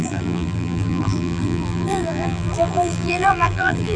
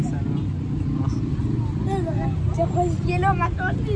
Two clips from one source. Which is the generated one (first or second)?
first